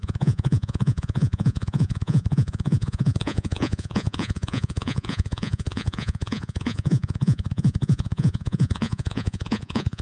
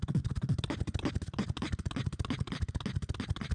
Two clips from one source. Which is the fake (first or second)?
first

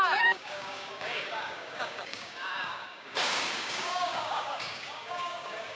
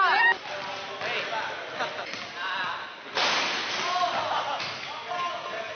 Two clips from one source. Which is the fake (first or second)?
first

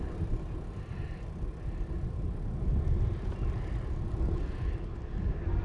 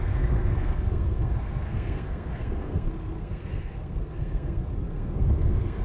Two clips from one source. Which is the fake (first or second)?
second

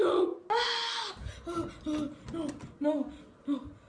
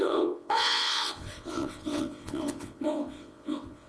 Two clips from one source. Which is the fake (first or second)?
second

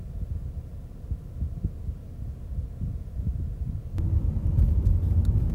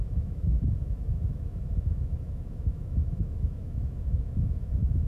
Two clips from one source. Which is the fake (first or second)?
second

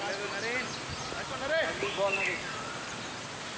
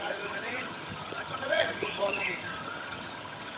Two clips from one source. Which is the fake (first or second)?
second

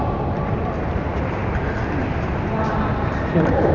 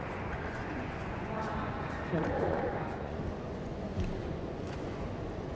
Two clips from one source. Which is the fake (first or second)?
second